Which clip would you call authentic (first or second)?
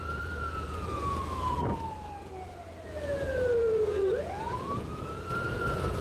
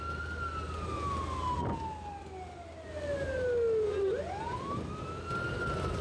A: second